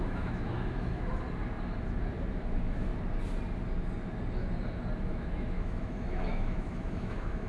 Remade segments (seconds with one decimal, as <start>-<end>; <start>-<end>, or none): 0.0-1.1; 2.3-2.9; 5.1-7.5